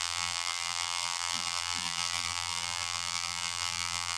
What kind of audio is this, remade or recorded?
remade